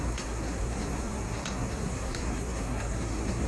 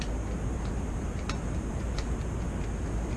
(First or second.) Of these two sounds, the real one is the second